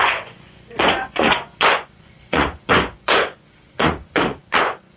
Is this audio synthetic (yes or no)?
yes